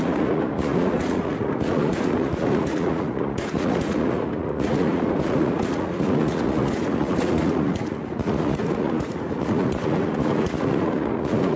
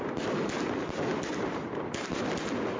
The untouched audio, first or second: second